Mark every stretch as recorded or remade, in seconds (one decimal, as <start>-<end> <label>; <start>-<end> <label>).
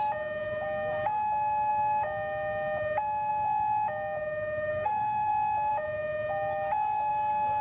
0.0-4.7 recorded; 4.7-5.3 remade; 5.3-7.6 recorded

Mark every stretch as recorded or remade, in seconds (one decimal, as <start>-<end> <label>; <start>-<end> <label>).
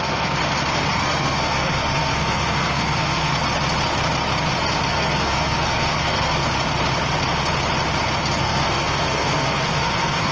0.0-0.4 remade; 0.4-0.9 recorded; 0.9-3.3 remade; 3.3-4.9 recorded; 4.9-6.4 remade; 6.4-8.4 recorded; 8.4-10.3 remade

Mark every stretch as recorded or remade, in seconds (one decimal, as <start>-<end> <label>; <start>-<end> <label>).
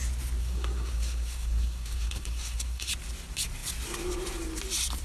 0.0-0.4 recorded; 0.4-2.9 remade; 2.9-5.0 recorded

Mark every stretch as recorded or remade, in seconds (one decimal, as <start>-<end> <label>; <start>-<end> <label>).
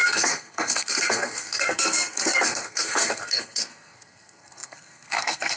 0.0-5.6 remade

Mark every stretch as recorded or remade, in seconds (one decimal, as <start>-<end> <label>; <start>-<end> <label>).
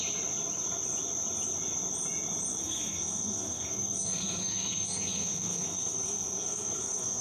0.0-2.6 recorded; 2.6-7.2 remade